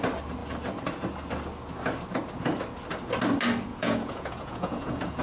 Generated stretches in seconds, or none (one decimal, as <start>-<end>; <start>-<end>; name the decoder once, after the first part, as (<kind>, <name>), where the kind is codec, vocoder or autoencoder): 3.7-5.2 (vocoder, Vocos)

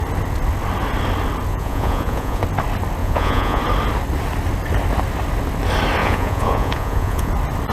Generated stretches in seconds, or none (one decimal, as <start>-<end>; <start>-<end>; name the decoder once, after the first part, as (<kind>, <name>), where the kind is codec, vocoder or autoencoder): 1.5-2.4 (vocoder, Vocos); 3.0-3.6; 6.0-7.3

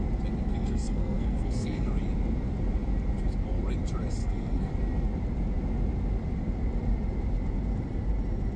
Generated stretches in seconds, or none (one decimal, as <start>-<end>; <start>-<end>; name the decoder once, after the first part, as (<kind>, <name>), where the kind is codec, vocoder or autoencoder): 0.5-1.9 (codec, SNAC); 4.2-4.7

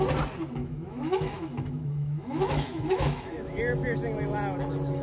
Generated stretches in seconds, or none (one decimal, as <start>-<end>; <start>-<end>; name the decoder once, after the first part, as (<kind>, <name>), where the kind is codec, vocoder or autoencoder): 0.6-3.6 (autoencoder, DAC-VAE)

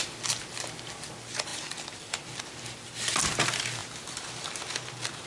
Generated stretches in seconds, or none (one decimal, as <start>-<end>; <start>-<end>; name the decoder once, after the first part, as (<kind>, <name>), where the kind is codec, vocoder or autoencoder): 1.5-2.4 (vocoder, BigVGAN v2); 3.8-4.5

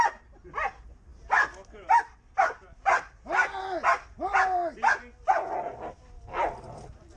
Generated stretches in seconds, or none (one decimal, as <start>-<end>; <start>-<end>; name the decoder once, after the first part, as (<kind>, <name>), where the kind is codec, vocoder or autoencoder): none

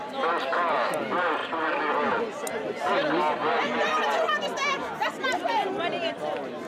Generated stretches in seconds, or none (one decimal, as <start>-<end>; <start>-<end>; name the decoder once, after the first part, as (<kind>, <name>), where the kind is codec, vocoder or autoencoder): 0.0-1.4 (vocoder, BigVGAN v2); 4.0-6.7

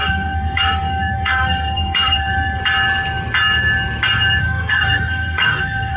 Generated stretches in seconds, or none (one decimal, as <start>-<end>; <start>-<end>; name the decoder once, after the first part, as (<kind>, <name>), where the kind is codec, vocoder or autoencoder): 0.0-2.6 (codec, SNAC); 4.4-6.0